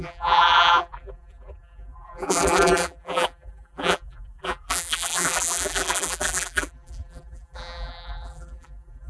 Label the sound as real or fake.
fake